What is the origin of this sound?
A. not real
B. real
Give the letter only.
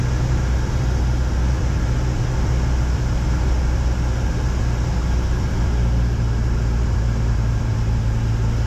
B